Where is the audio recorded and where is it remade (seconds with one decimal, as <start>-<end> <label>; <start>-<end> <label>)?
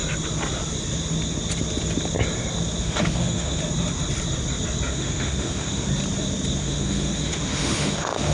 0.0-2.8 recorded; 2.8-3.6 remade; 3.6-4.9 recorded; 4.9-5.8 remade; 5.8-6.6 recorded; 6.6-8.3 remade